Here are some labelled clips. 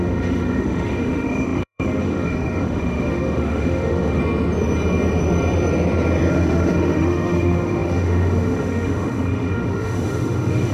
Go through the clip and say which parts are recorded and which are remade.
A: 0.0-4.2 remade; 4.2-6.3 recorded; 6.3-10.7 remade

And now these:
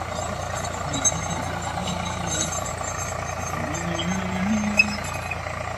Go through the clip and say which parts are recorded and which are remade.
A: 0.0-5.8 recorded